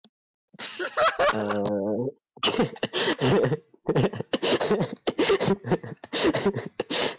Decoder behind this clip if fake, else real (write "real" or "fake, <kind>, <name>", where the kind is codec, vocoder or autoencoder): real